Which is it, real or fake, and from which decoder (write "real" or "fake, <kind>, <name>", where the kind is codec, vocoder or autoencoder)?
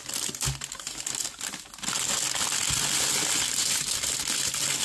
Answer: real